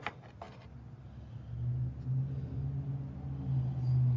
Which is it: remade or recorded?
recorded